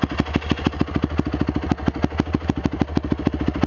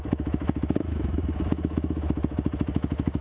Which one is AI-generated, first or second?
second